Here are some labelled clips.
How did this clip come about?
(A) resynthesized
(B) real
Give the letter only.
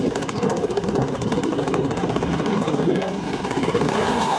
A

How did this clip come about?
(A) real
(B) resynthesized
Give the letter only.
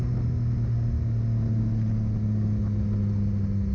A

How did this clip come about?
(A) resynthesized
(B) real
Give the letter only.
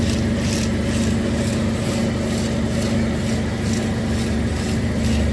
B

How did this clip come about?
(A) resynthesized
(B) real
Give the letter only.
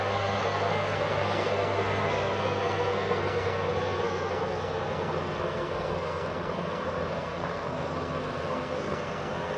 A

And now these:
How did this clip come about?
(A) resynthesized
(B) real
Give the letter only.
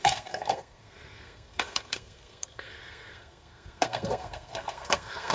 A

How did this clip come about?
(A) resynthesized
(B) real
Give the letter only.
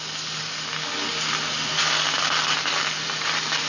B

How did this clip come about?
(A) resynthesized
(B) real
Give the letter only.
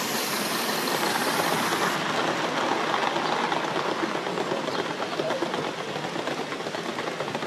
B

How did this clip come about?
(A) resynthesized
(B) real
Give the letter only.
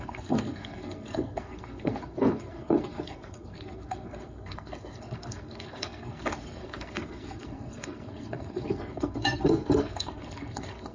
A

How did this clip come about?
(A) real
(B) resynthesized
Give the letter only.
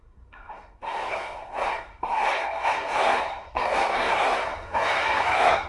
B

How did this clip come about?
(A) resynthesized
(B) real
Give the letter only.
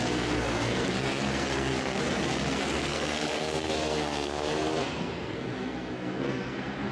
A